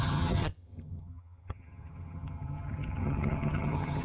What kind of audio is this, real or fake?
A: fake